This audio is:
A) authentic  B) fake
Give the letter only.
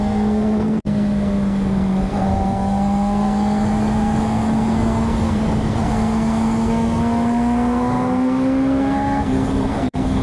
B